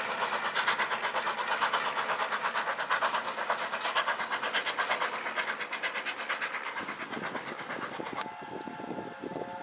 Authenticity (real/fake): real